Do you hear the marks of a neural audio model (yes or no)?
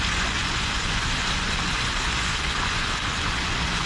yes